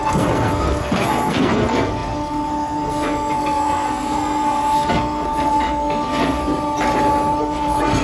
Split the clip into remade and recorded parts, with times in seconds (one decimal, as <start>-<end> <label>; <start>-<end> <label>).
0.0-6.4 remade; 6.4-7.4 recorded; 7.4-8.0 remade